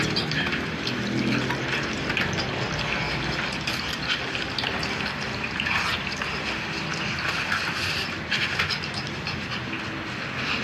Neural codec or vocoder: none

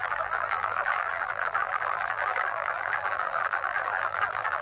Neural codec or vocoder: vocoder, BigVGAN v2